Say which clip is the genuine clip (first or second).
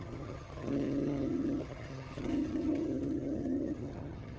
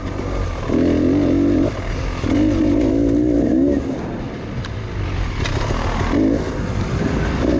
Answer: second